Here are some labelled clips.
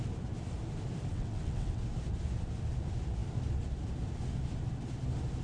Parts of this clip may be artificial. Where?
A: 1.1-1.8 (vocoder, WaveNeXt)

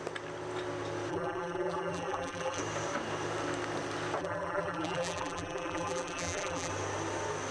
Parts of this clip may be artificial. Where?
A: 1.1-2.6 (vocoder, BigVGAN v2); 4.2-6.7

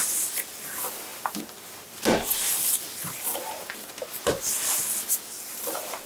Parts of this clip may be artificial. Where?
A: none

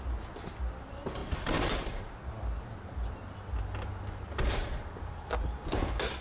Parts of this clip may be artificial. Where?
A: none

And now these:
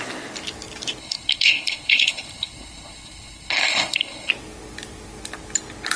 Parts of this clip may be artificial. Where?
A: 1.0-4.3 (codec, HILCodec)

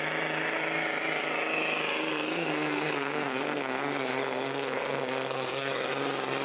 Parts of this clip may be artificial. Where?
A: 2.1-5.9 (codec, SNAC)